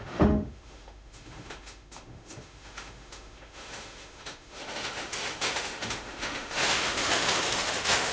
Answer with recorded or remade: remade